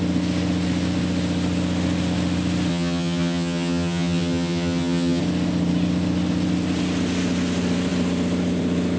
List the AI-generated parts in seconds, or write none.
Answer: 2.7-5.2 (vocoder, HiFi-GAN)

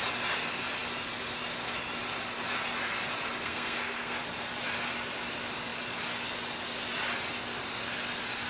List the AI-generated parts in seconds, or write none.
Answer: 3.4-4.2 (codec, SNAC)

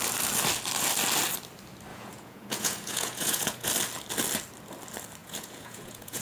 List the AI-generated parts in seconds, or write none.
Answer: 1.9-3.7 (vocoder, Vocos); 5.2-6.2

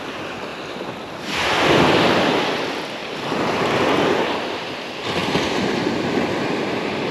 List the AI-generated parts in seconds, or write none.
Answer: 3.0-4.0 (vocoder, BigVGAN v2)

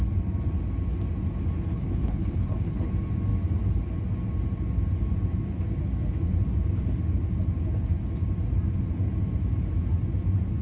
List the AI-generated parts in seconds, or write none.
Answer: 1.7-2.9 (codec, HILCodec)

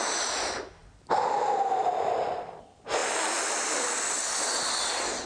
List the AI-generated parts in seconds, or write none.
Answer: none

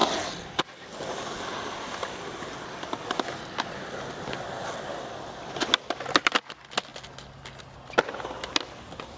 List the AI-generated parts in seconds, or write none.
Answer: none

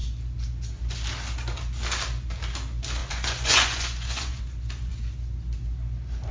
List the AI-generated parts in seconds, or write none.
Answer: 3.0-4.4 (vocoder, Vocos)